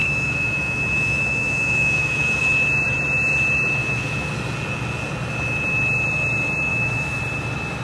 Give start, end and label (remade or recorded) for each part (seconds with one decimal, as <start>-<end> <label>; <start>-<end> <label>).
0.0-2.4 remade; 2.4-3.8 recorded; 3.8-4.3 remade; 4.3-6.7 recorded; 6.7-7.2 remade; 7.2-7.8 recorded